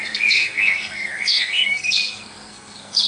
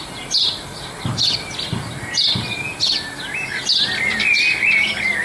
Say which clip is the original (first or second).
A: second